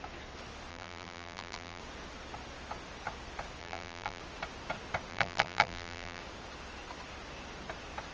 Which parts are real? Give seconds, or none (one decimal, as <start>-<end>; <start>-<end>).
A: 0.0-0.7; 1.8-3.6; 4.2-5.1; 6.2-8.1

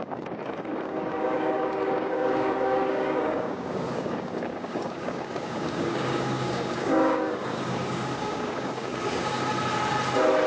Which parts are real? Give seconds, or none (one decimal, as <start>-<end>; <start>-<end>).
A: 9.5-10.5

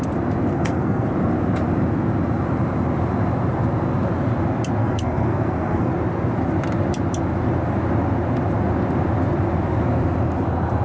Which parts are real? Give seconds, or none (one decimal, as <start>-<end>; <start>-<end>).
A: 0.0-0.5; 1.1-4.8; 5.9-10.8

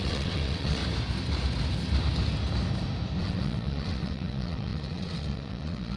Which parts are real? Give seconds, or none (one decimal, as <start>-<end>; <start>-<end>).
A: 0.8-3.2

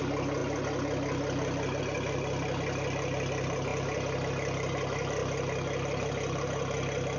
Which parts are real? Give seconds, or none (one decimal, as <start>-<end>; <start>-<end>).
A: 0.0-7.2

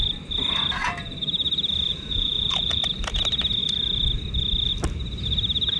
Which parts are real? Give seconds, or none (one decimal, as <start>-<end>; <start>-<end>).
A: 0.0-1.9; 2.8-5.8

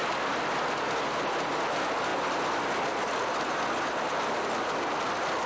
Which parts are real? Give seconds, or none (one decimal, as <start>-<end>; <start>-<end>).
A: 0.0-5.5

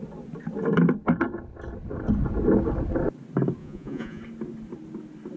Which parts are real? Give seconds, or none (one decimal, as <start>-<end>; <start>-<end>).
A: 0.0-3.6; 4.2-5.4